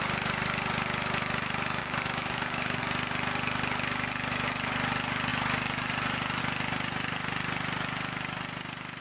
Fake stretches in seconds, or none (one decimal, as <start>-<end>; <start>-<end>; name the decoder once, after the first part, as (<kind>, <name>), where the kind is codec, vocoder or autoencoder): 1.8-2.8 (codec, DAC)